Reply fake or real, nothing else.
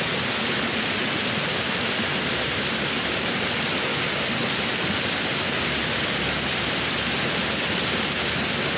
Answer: real